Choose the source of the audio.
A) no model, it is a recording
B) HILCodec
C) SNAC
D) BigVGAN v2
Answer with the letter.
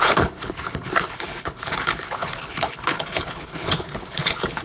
B